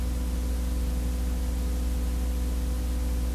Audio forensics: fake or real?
real